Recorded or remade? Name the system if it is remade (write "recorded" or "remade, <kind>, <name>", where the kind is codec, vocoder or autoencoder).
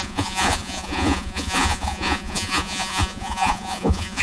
remade, vocoder, Vocos